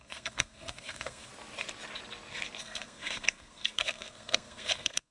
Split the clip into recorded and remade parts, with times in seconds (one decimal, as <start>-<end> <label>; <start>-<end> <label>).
0.0-1.3 remade; 1.3-2.6 recorded; 2.6-5.1 remade